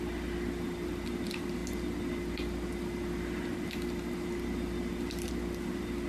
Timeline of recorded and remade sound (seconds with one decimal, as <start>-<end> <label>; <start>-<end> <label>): 0.0-6.1 recorded